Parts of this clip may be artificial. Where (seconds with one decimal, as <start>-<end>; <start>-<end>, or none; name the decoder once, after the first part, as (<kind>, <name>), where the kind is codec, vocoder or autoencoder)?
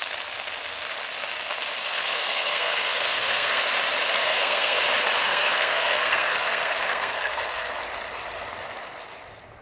1.8-3.6 (codec, SNAC); 4.2-4.8; 5.2-7.7